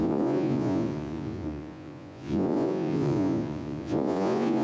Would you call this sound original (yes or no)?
no